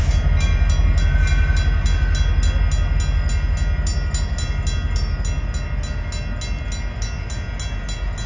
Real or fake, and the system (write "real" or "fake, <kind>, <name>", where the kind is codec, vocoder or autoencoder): real